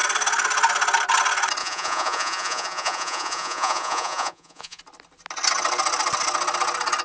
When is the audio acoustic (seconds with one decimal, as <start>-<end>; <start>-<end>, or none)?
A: 0.0-1.6; 4.8-7.0